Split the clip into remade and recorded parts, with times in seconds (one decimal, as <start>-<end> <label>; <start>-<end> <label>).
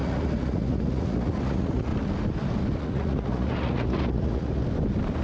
0.0-1.9 remade; 1.9-2.8 recorded; 2.8-4.6 remade; 4.6-5.2 recorded